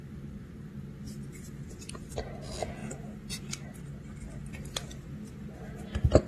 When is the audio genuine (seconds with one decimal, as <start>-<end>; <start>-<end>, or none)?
0.0-2.8; 3.8-6.3